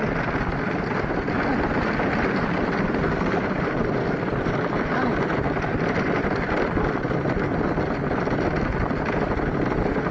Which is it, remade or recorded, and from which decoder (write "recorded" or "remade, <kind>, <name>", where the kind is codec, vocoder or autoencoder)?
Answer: recorded